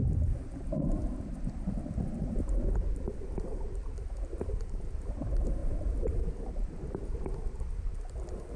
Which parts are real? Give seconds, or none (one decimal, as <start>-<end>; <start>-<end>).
none

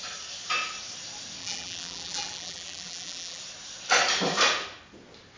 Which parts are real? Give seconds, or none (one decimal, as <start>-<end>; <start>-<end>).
0.0-1.4; 3.4-5.4